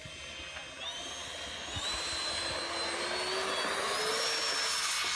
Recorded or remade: recorded